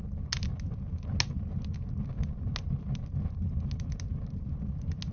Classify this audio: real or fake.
real